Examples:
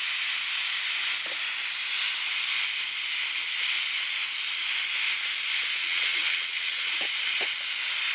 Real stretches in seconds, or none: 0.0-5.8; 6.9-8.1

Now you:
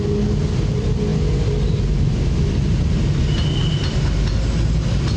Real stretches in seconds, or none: 0.0-5.2

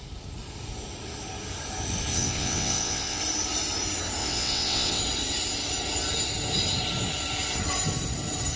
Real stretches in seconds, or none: 0.0-2.1; 3.2-4.2; 5.0-8.6